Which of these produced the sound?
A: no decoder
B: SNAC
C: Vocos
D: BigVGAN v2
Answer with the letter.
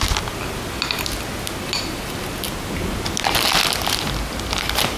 A